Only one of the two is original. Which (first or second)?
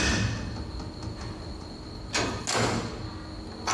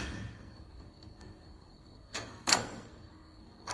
first